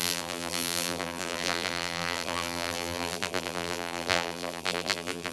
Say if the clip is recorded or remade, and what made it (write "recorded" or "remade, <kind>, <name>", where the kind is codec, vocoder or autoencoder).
remade, vocoder, BigVGAN v2